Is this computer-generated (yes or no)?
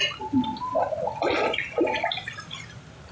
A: no